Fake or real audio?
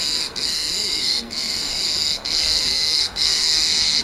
fake